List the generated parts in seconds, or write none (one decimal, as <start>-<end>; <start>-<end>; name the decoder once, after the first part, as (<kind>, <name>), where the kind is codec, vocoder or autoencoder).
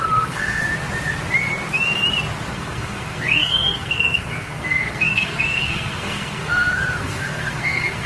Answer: 0.0-0.6 (codec, SNAC); 2.5-8.1